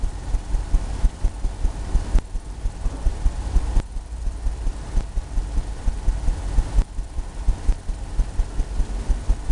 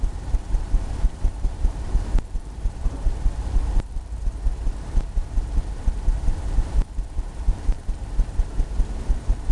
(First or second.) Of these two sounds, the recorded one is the first